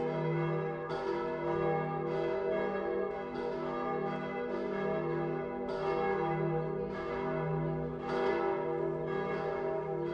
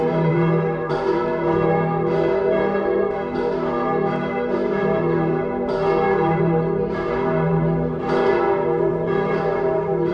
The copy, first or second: second